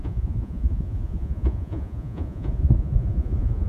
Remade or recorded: remade